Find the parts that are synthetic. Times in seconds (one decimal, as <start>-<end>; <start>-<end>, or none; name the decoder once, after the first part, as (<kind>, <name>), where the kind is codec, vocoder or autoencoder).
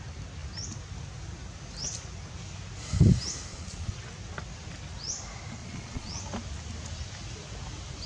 3.5-4.0 (vocoder, Vocos); 5.6-6.2